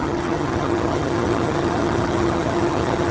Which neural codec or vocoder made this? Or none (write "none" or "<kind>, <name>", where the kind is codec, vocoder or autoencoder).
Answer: vocoder, HiFi-GAN